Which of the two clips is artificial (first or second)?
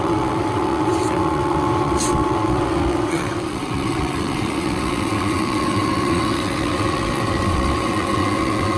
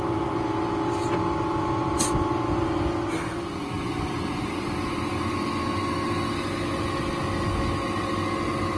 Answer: first